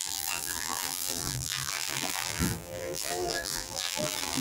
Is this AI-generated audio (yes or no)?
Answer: yes